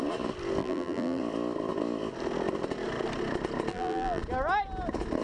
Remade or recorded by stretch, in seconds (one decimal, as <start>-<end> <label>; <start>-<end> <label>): 0.0-0.6 recorded; 0.6-1.2 remade; 1.2-3.7 recorded; 3.7-4.2 remade; 4.2-5.2 recorded